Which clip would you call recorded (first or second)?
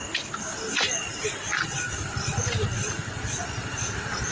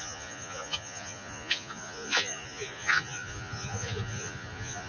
first